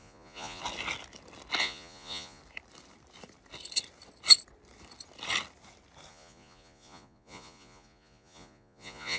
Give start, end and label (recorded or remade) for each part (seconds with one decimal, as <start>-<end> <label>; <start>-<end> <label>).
0.0-0.6 remade; 0.6-1.6 recorded; 1.6-2.4 remade; 2.4-6.1 recorded; 6.1-9.2 remade